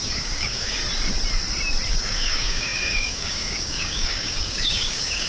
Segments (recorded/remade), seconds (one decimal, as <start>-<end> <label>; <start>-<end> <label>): 0.0-0.8 remade; 0.8-1.9 recorded; 1.9-5.3 remade